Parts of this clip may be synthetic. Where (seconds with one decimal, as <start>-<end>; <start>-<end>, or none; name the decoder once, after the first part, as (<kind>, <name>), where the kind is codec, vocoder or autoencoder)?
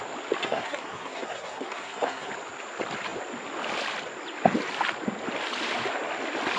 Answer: 0.4-2.3 (codec, SNAC)